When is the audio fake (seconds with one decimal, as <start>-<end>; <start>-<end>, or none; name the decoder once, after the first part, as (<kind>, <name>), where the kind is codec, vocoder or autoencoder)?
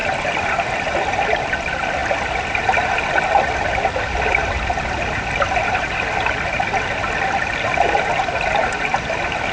none